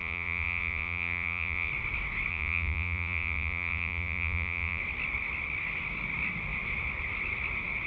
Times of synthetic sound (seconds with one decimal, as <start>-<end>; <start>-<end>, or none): 0.0-1.7; 2.3-4.8